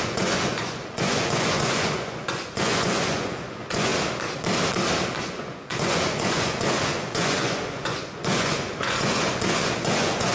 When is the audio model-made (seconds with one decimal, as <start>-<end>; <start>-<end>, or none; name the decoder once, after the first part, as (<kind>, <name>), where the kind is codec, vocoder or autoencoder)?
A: 0.0-3.9 (vocoder, Vocos); 5.2-10.3